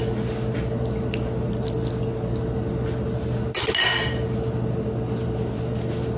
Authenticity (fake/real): real